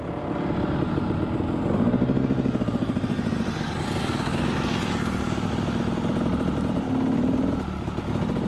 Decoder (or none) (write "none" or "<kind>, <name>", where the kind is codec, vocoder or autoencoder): none